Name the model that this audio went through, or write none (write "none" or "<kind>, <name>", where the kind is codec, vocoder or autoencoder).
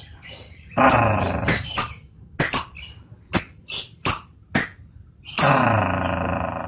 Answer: none